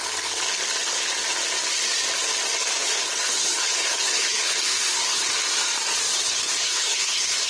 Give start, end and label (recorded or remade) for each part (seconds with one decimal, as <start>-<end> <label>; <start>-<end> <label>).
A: 0.0-2.8 recorded; 2.8-5.3 remade; 5.3-6.1 recorded; 6.1-7.5 remade